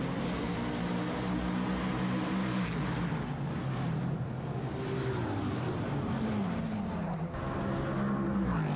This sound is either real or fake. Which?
real